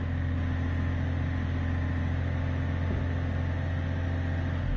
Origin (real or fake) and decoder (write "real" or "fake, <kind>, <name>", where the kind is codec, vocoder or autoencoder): real